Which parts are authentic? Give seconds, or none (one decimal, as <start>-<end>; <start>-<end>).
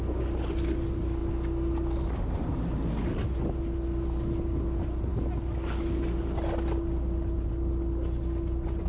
0.0-8.9